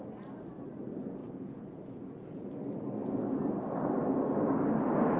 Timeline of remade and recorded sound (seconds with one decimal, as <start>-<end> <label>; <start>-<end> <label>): 0.0-1.2 recorded; 1.2-2.5 remade; 2.5-5.2 recorded